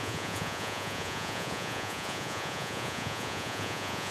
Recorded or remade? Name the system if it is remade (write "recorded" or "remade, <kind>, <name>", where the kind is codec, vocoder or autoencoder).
remade, vocoder, Vocos